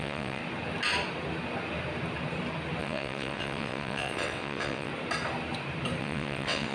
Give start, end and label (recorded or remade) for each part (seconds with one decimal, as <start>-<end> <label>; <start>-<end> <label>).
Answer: 0.0-0.4 remade; 0.4-2.8 recorded; 2.8-4.9 remade; 4.9-6.0 recorded; 6.0-6.7 remade